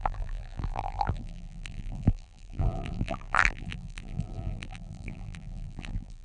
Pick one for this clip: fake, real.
fake